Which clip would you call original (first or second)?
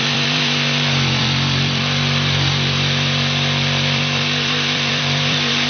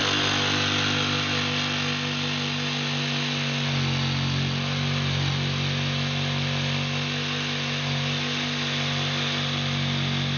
second